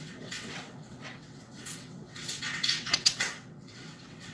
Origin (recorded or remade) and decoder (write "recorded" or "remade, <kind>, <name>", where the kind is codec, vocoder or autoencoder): remade, vocoder, WaveNeXt